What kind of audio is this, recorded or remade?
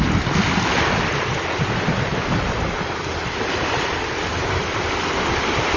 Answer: recorded